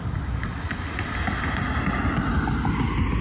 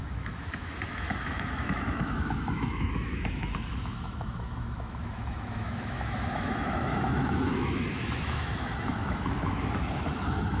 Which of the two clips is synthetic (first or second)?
second